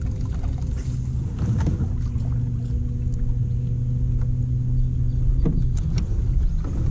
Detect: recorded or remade recorded